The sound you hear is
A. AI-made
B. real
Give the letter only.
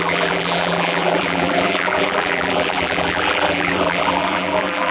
A